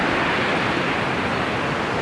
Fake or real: real